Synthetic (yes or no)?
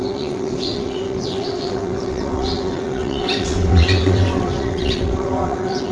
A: yes